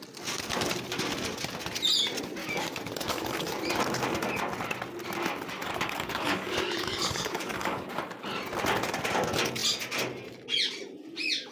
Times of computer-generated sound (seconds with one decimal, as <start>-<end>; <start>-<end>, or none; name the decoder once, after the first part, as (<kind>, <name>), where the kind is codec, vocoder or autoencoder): 2.4-3.6 (codec, DAC); 5.6-7.9